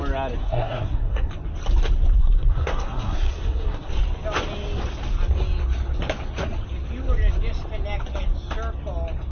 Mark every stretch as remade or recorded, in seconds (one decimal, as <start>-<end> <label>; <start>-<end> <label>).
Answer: 0.0-0.4 recorded; 0.4-1.3 remade; 1.3-2.2 recorded; 2.2-3.9 remade; 3.9-9.3 recorded

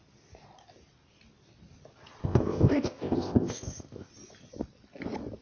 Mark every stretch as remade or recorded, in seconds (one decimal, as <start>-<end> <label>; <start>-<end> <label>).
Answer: 0.0-2.2 recorded; 2.2-4.1 remade; 4.1-5.4 recorded

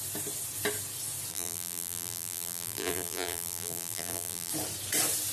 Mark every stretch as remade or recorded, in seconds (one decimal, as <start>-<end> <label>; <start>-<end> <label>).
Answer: 0.0-1.3 recorded; 1.3-4.5 remade; 4.5-5.3 recorded

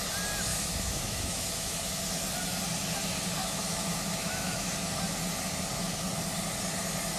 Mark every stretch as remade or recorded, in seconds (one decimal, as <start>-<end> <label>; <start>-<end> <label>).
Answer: 0.0-0.5 recorded; 0.5-2.0 remade; 2.0-3.4 recorded; 3.4-4.7 remade; 4.7-7.2 recorded

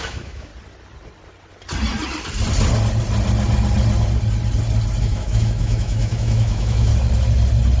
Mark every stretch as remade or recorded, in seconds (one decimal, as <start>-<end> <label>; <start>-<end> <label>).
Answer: 0.0-0.5 remade; 0.5-5.0 recorded; 5.0-6.9 remade; 6.9-7.8 recorded

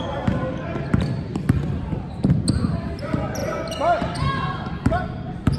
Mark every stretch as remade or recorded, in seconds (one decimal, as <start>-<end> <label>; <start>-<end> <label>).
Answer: 0.0-5.6 recorded

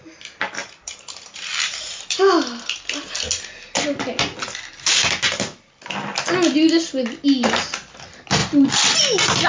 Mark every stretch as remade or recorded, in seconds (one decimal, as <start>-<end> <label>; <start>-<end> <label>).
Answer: 0.0-0.6 recorded; 0.6-2.3 remade; 2.3-9.5 recorded